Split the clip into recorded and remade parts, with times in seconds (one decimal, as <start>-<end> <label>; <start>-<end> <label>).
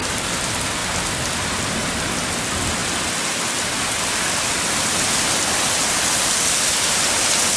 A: 0.0-7.6 recorded